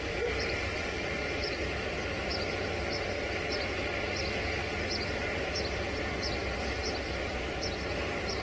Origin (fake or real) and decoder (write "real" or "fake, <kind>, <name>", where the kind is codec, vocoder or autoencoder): real